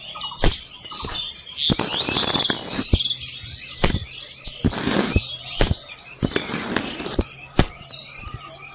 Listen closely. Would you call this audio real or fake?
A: real